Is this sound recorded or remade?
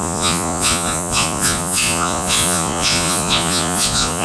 remade